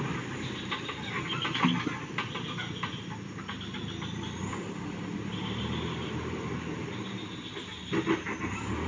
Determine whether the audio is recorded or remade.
recorded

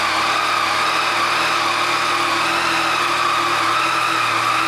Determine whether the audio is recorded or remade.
recorded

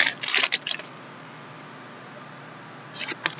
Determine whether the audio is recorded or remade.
recorded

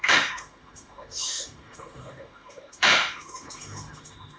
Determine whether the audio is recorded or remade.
remade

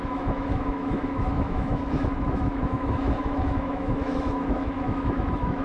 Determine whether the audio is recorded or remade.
remade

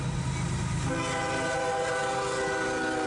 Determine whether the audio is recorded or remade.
recorded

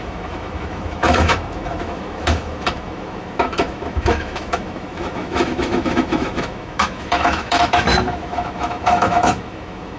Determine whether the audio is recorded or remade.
remade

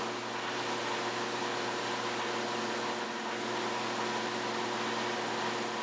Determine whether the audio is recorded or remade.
recorded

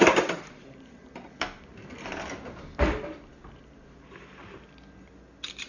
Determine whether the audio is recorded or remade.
recorded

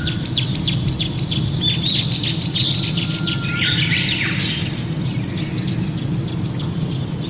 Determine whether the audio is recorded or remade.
recorded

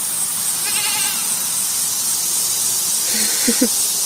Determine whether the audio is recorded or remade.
recorded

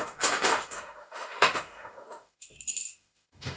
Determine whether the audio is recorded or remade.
remade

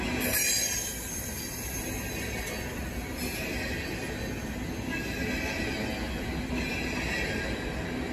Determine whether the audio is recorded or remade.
recorded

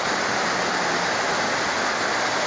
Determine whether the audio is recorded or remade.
recorded